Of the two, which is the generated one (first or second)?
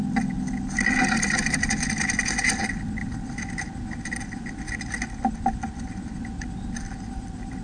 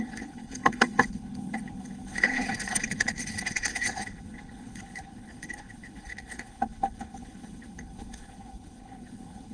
second